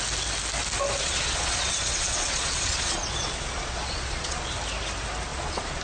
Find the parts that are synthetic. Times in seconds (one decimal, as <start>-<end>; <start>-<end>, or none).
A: 1.0-4.5; 5.3-5.8